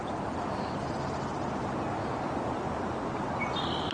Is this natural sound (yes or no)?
yes